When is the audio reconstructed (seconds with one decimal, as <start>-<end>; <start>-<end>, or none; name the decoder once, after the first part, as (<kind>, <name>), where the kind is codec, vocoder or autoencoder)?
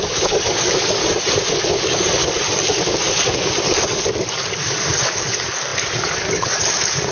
0.0-1.0 (codec, DAC); 1.5-2.2; 2.8-7.1